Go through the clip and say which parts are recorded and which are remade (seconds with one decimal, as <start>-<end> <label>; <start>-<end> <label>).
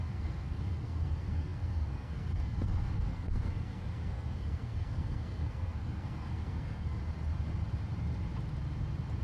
0.0-7.0 remade; 7.0-9.2 recorded